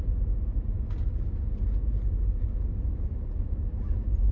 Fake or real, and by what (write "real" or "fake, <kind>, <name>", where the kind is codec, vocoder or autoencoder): real